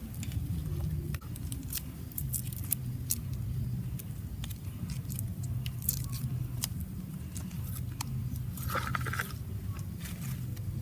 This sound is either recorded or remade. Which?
recorded